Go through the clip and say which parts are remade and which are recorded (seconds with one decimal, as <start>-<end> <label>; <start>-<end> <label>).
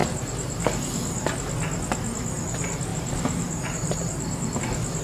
0.0-0.6 remade; 0.6-2.9 recorded; 2.9-4.6 remade; 4.6-5.0 recorded